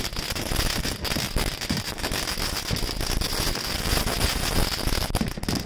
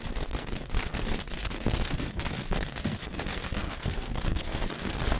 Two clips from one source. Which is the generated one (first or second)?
second